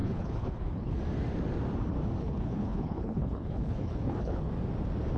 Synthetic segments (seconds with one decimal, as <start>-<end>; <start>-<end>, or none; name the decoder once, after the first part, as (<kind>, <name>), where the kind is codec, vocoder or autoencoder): 0.0-1.0 (codec, HILCodec); 2.2-4.5